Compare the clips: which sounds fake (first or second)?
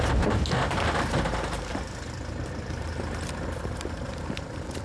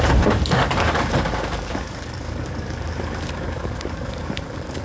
second